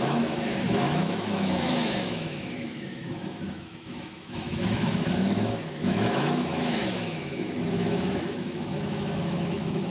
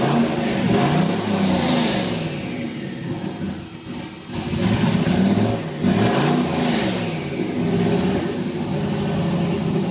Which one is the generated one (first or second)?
first